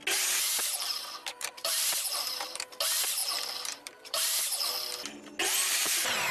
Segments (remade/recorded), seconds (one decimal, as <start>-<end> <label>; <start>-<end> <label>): 0.0-0.7 recorded; 0.7-2.7 remade; 2.7-3.2 recorded; 3.2-4.4 remade; 4.4-5.4 recorded; 5.4-6.3 remade